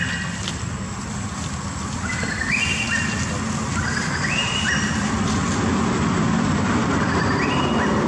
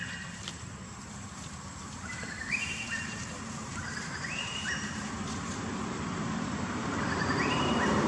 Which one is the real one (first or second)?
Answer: first